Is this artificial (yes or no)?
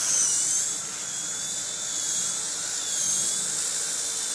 no